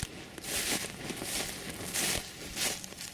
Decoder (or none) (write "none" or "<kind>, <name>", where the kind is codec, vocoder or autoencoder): none